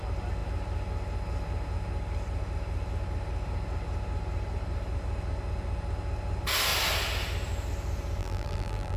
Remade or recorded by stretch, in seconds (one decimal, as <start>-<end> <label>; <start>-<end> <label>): 0.0-8.2 recorded; 8.2-9.0 remade